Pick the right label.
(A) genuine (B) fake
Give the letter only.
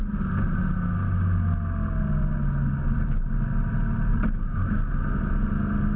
A